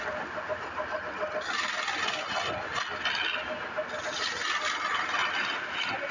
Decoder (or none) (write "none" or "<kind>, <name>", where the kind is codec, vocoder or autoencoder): none